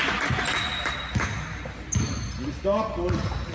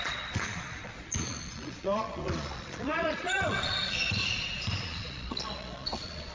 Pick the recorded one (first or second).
first